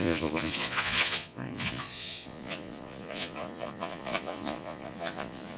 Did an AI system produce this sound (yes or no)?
yes